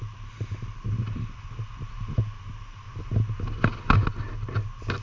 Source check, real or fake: real